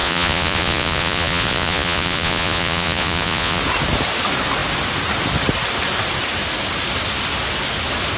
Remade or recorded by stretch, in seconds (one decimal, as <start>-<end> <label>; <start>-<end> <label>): 0.0-3.6 remade; 3.6-8.2 recorded